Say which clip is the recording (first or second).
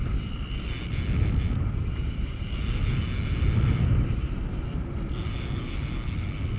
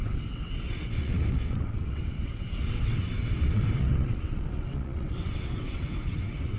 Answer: first